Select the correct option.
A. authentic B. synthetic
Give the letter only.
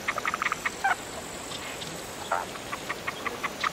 A